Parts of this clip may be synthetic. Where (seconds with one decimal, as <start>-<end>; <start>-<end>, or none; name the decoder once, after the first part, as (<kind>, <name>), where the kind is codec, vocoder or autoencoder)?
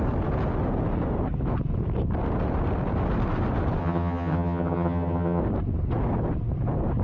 3.8-5.4 (vocoder, HiFi-GAN)